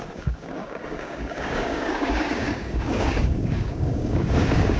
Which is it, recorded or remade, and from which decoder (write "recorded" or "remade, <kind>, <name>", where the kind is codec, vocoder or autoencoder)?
remade, codec, DAC